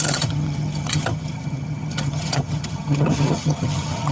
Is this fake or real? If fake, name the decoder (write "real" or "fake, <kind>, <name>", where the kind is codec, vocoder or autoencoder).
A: fake, vocoder, HiFi-GAN